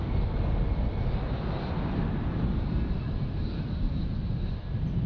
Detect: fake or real real